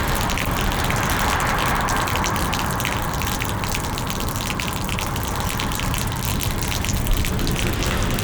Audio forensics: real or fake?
real